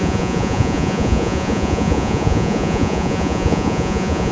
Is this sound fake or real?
fake